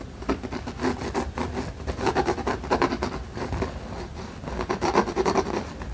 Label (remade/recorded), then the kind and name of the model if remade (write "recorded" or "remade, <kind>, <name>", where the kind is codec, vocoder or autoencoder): recorded